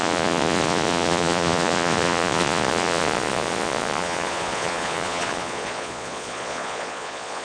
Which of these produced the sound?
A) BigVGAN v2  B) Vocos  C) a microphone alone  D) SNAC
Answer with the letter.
B